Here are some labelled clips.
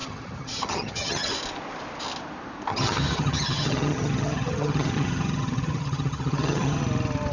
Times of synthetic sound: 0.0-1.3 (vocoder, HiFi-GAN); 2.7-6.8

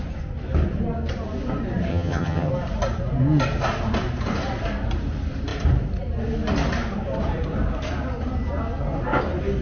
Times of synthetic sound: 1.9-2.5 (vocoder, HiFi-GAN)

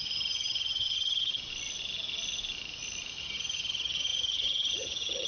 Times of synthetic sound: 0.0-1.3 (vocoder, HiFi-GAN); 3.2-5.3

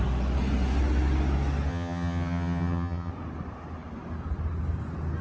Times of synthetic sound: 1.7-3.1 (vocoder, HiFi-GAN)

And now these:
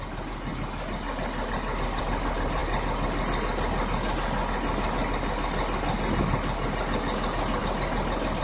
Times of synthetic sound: none

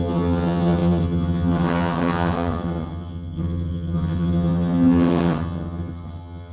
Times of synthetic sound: 0.0-6.5 (vocoder, HiFi-GAN)